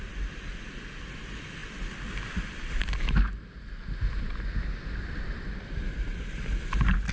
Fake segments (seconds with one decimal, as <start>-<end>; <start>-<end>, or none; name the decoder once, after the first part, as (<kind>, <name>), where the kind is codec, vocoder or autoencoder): none